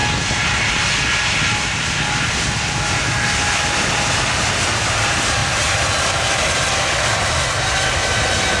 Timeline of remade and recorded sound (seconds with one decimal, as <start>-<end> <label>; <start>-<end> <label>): 0.0-8.6 recorded